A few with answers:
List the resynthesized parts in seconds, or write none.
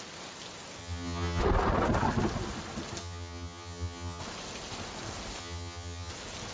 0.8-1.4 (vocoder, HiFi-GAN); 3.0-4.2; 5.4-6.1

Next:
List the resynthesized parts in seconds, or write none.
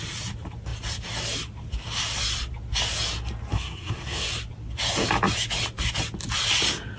3.5-4.3 (codec, SNAC)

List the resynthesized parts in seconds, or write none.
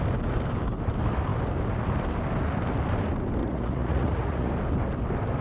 3.4-4.5 (vocoder, Vocos)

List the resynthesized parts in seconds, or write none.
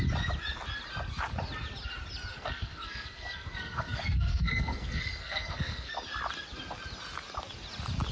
2.3-5.9 (codec, SNAC)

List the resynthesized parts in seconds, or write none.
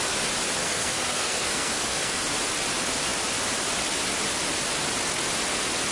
0.6-2.2 (codec, SNAC)